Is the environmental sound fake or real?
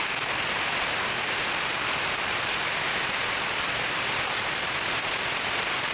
real